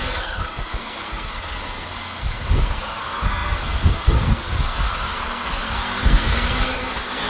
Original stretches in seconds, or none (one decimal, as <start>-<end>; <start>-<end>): none